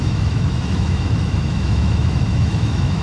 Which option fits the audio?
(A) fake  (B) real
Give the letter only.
A